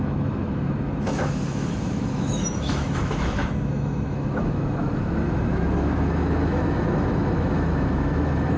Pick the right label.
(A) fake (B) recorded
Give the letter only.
A